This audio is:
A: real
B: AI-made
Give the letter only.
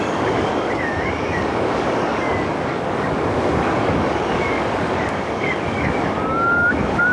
B